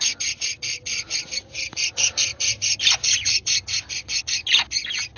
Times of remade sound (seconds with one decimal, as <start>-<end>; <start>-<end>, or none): 2.3-4.2